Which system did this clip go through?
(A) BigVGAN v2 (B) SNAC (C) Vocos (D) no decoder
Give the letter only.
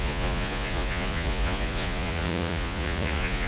C